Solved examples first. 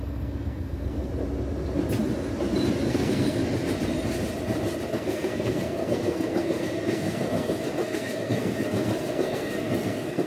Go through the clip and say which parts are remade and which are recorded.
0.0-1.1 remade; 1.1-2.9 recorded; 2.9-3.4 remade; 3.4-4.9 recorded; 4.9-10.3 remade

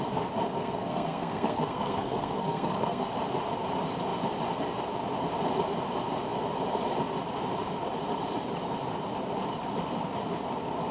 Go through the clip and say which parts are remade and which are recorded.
0.0-0.5 recorded; 0.5-3.1 remade; 3.1-10.9 recorded